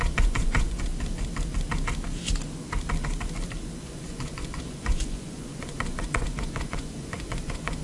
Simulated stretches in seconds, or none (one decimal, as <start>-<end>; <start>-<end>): 0.0-0.9; 3.8-7.8